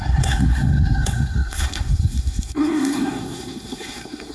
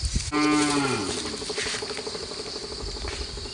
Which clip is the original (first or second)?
second